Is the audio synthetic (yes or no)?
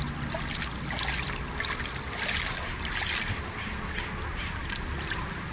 no